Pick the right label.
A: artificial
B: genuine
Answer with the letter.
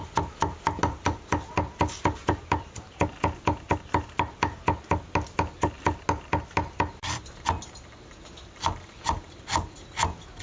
B